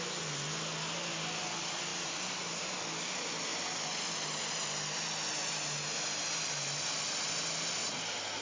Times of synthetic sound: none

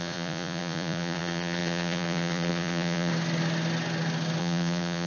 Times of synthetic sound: 0.0-3.1; 4.4-5.1

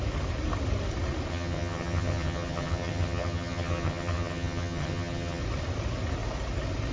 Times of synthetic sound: 1.3-5.4

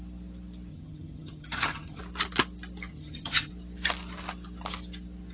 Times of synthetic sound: 0.7-2.0; 2.9-3.5

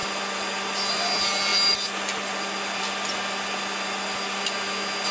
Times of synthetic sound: none

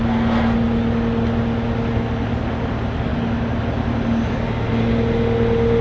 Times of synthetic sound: none

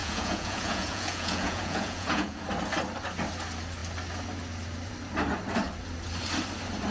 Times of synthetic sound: 0.0-2.4

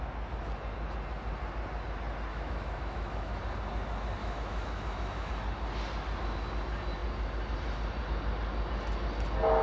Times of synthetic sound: 2.3-3.4; 4.2-5.3